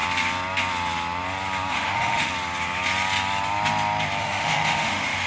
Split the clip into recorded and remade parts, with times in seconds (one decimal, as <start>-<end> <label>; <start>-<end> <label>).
0.0-1.7 recorded; 1.7-2.3 remade; 2.3-4.2 recorded; 4.2-5.3 remade